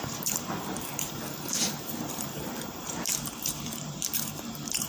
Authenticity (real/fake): fake